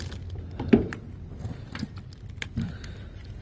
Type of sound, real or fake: real